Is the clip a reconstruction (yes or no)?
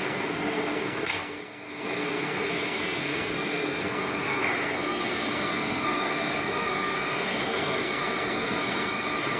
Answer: yes